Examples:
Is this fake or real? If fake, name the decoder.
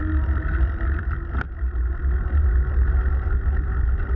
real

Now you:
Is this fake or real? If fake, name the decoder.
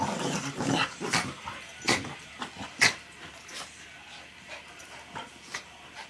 real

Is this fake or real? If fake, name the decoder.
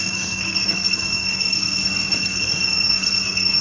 fake, codec, SNAC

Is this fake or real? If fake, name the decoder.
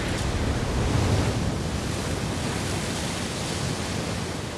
real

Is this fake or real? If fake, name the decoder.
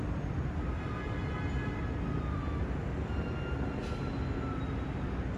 real